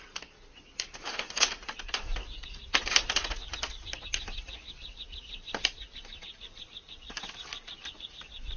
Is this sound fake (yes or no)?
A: no